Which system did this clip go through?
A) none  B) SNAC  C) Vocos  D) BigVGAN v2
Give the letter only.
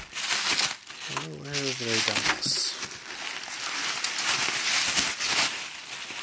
A